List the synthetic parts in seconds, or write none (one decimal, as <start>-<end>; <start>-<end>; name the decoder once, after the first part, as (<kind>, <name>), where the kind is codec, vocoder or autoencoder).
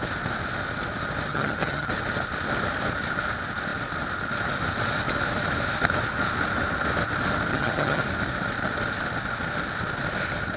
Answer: 1.3-1.9 (vocoder, HiFi-GAN); 7.5-8.0